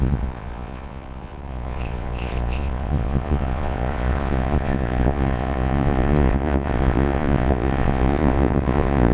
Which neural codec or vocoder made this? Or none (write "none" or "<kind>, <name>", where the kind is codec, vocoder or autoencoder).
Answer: vocoder, Vocos